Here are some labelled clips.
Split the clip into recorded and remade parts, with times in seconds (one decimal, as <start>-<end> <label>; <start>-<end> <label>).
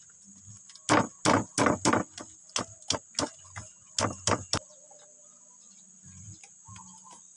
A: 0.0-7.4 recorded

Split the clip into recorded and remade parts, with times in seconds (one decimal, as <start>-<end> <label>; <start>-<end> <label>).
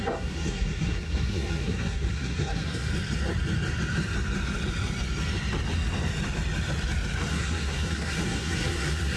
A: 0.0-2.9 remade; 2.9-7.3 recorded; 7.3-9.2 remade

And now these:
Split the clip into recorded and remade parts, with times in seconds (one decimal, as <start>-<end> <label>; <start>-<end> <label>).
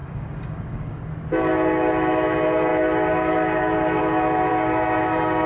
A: 0.0-1.1 remade; 1.1-5.5 recorded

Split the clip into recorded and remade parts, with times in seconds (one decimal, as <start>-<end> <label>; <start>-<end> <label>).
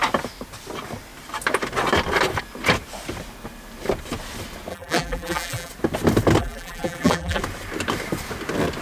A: 0.0-4.7 recorded; 4.7-5.7 remade; 5.7-6.4 recorded; 6.4-7.4 remade; 7.4-8.8 recorded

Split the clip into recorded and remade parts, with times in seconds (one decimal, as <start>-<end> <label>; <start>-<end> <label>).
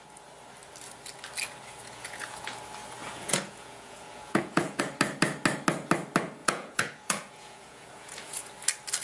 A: 0.0-1.8 recorded; 1.8-2.5 remade; 2.5-3.0 recorded; 3.0-4.8 remade; 4.8-6.4 recorded; 6.4-8.5 remade; 8.5-9.0 recorded